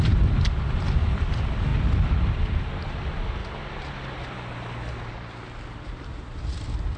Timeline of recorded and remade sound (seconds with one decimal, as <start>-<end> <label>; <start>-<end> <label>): 0.0-7.0 recorded